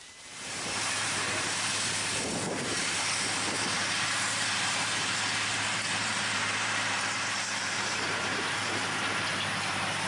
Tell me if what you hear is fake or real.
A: fake